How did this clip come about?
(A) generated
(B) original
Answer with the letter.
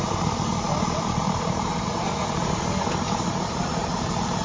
A